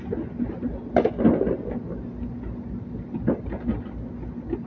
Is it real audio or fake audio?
real